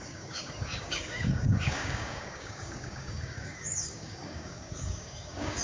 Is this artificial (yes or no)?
yes